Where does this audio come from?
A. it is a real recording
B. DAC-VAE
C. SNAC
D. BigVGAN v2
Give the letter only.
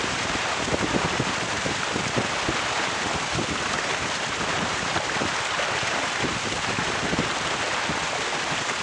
A